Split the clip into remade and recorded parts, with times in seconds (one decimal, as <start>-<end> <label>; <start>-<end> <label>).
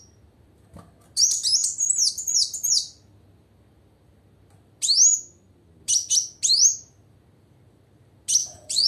0.0-8.4 recorded; 8.4-8.9 remade